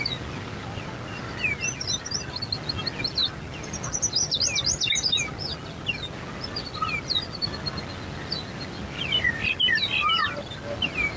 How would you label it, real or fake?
real